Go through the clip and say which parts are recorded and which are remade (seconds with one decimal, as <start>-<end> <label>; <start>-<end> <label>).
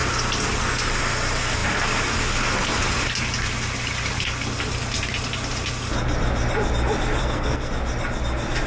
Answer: 0.0-7.2 recorded; 7.2-7.7 remade; 7.7-8.7 recorded